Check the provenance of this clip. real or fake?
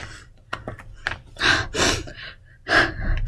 real